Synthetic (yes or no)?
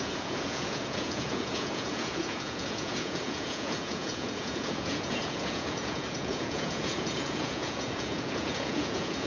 yes